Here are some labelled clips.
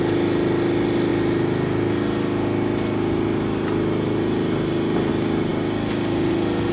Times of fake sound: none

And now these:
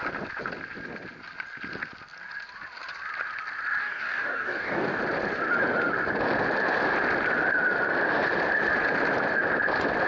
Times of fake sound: 3.8-5.0 (codec, DAC)

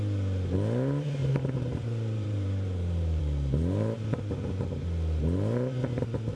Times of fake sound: 1.2-3.2 (vocoder, BigVGAN v2)

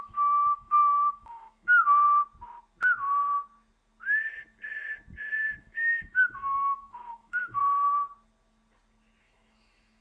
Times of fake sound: 0.0-1.8 (autoencoder, DAC-VAE); 5.6-7.6; 9.2-10.0

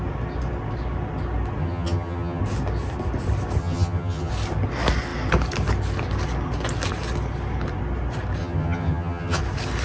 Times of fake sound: 1.6-2.4 (vocoder, HiFi-GAN); 3.6-4.3; 8.4-9.4

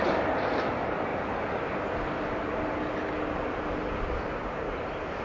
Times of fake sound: none

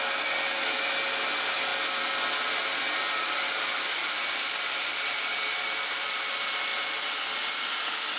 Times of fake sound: none

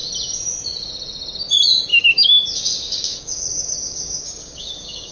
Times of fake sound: 1.9-5.1 (codec, DAC)